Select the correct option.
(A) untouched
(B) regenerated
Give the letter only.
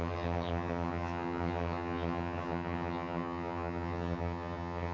B